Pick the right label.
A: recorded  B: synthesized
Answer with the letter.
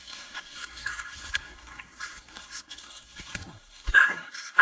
B